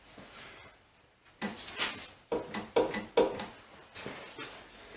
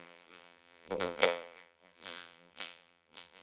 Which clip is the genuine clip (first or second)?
first